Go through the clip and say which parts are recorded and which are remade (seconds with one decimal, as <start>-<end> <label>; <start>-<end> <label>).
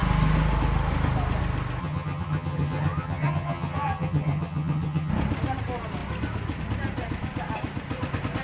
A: 0.0-1.8 recorded; 1.8-5.1 remade; 5.1-8.4 recorded